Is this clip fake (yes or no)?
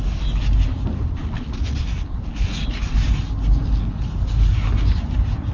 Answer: no